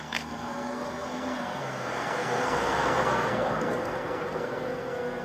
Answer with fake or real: fake